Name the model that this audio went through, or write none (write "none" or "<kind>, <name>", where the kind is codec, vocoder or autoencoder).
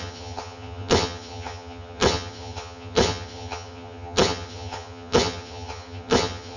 vocoder, HiFi-GAN